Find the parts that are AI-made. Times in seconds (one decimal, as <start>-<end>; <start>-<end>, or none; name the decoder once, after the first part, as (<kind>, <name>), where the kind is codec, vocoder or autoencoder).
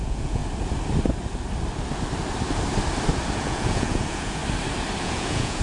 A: 0.0-0.4 (vocoder, Vocos); 3.4-4.4; 5.0-5.6